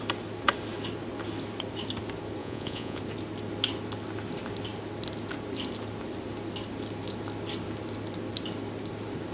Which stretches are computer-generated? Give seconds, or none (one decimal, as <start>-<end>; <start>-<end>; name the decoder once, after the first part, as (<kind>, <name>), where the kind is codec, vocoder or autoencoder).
2.4-3.0 (vocoder, Vocos)